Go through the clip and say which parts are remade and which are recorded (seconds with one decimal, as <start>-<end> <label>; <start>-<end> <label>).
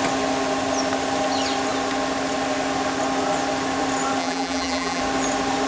0.0-4.2 recorded; 4.2-5.0 remade; 5.0-5.7 recorded